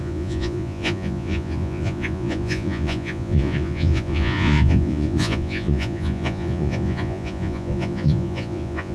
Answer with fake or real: fake